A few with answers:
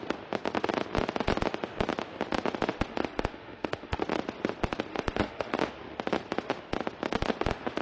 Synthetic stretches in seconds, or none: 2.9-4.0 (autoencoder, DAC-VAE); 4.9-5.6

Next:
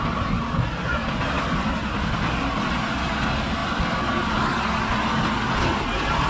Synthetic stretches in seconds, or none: none

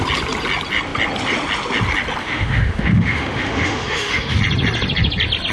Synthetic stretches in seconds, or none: 2.2-4.4 (autoencoder, DAC-VAE)

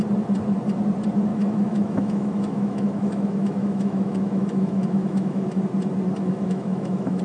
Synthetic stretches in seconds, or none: 1.3-5.6 (autoencoder, DAC-VAE); 6.2-7.2

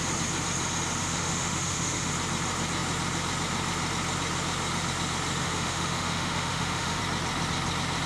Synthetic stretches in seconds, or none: 1.0-2.1 (autoencoder, DAC-VAE); 5.4-7.0

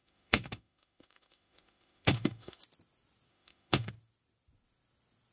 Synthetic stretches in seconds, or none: 0.0-2.6 (autoencoder, DAC-VAE); 3.3-3.9

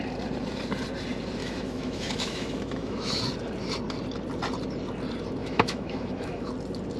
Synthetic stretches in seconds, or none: 1.4-3.2 (autoencoder, DAC-VAE); 5.4-6.5

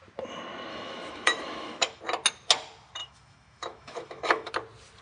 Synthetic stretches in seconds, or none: 0.7-2.0 (autoencoder, DAC-VAE); 3.0-4.5